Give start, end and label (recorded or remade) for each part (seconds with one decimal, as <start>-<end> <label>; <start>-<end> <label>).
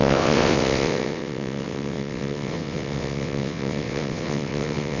0.0-5.0 remade